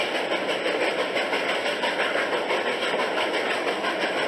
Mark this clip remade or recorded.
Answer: remade